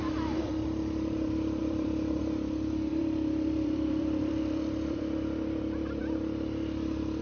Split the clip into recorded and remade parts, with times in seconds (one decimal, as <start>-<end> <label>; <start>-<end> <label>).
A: 0.0-1.6 recorded; 1.6-2.2 remade; 2.2-2.9 recorded; 2.9-5.0 remade; 5.0-7.2 recorded